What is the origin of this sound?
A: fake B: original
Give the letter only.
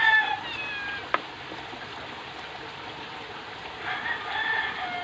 B